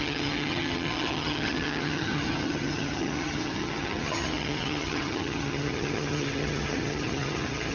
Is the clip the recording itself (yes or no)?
no